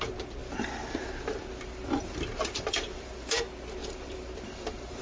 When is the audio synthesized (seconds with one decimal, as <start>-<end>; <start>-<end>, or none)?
0.4-3.4; 3.8-5.0